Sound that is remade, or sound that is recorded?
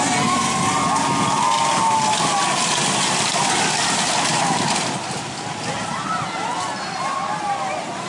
recorded